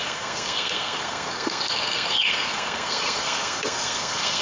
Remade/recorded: remade